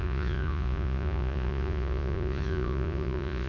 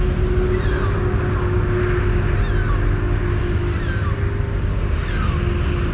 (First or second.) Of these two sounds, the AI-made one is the first